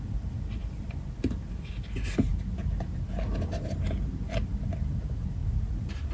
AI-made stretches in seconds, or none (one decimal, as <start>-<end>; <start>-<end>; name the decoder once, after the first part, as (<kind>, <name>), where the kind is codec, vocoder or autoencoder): none

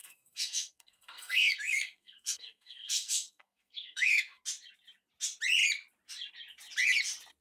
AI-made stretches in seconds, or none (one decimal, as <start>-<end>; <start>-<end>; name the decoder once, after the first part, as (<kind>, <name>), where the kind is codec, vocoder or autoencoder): 0.0-4.4 (codec, SNAC)

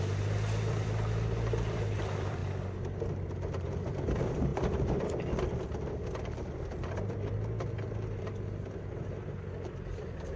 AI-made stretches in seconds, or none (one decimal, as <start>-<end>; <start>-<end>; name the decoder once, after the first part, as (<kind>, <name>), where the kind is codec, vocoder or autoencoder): 0.0-2.4 (vocoder, BigVGAN v2); 3.9-10.4

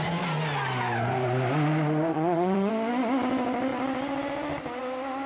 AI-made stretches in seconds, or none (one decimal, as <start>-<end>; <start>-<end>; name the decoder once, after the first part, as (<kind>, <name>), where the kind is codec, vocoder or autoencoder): 2.1-2.7 (vocoder, HiFi-GAN)